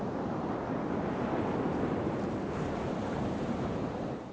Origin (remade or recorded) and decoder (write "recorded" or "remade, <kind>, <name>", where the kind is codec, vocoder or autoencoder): recorded